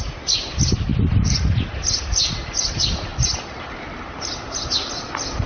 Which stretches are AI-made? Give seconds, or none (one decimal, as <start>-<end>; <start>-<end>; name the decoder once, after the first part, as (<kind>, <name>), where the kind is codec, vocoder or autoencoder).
none